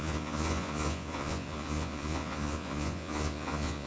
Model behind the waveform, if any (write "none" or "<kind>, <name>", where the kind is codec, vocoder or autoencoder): vocoder, Vocos